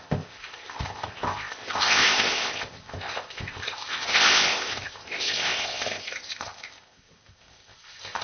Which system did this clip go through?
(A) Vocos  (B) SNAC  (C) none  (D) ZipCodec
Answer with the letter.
D